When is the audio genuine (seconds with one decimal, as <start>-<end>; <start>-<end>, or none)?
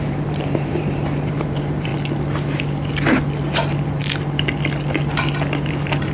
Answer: 1.9-5.6